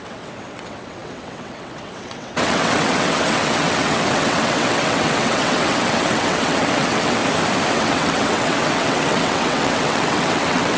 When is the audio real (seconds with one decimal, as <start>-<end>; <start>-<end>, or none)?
7.2-7.7